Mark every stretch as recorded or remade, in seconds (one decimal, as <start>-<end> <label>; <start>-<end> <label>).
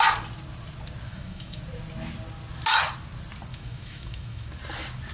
0.0-1.1 recorded; 1.1-1.6 remade; 1.6-3.5 recorded; 3.5-4.5 remade; 4.5-5.1 recorded